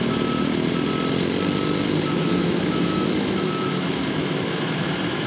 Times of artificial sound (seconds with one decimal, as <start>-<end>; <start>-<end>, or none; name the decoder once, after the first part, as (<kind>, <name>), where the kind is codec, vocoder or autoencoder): 2.1-5.3 (autoencoder, DAC-VAE)